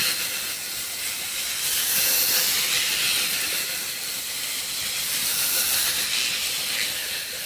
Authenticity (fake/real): real